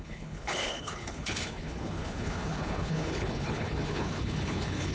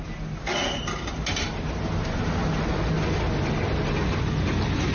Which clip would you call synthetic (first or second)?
first